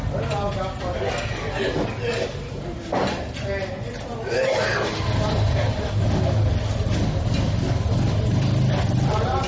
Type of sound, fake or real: real